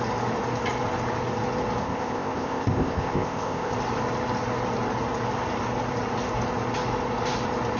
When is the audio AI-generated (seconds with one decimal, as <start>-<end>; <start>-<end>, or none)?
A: 1.8-3.7